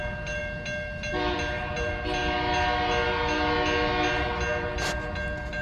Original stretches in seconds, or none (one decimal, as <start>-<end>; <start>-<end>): 0.0-5.6

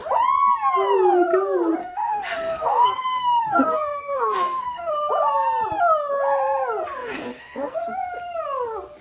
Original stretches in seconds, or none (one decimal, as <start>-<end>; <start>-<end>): 0.0-1.8; 4.9-7.0; 7.8-9.0

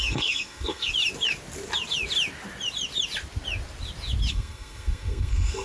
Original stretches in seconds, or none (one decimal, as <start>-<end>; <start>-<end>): 0.9-4.3

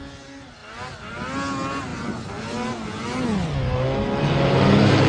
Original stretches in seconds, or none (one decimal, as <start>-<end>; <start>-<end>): 0.0-5.1

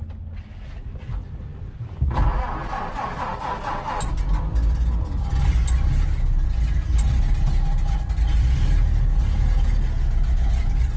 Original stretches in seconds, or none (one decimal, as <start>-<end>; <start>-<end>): 0.0-11.0

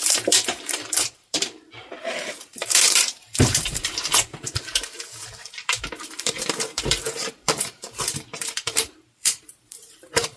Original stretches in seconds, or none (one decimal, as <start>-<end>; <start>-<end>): none